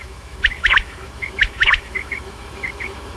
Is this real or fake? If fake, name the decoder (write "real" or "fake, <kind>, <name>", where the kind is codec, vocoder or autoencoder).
fake, autoencoder, DAC-VAE